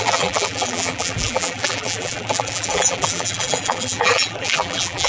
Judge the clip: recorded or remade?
remade